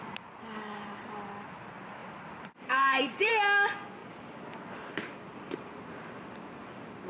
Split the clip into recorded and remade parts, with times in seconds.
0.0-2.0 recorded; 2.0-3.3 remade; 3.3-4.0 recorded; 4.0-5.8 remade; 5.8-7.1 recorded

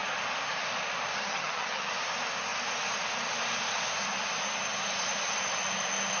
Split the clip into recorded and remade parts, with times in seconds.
0.0-1.2 recorded; 1.2-1.9 remade; 1.9-6.2 recorded

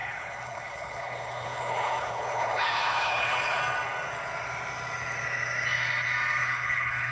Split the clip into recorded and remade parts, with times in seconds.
0.0-3.6 remade; 3.6-6.4 recorded; 6.4-7.1 remade